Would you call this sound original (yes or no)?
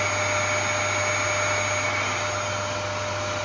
yes